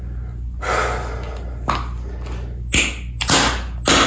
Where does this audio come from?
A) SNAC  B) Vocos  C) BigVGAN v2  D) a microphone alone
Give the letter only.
D